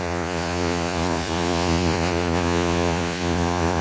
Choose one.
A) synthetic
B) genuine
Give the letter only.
A